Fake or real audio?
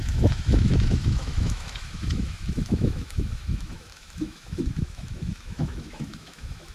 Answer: fake